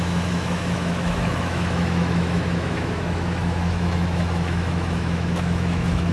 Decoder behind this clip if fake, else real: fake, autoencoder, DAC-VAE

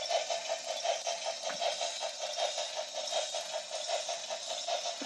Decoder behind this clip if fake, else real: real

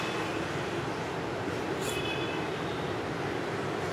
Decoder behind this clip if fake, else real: fake, vocoder, BigVGAN v2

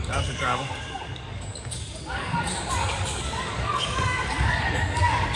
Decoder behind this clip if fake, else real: fake, codec, DAC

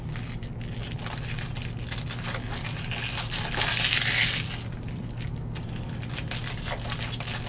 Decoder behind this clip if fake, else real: real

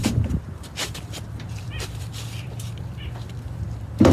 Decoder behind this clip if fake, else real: fake, vocoder, BigVGAN v2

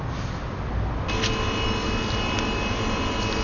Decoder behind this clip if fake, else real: real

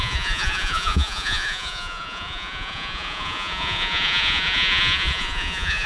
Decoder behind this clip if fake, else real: fake, vocoder, Vocos